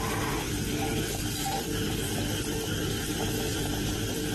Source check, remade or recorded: remade